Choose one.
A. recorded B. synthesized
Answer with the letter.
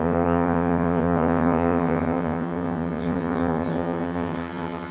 B